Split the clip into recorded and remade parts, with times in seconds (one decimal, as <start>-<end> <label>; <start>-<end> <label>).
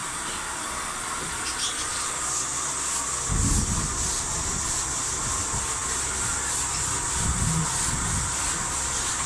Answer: 0.0-9.3 recorded